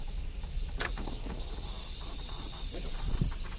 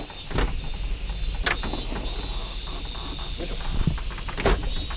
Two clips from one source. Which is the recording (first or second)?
second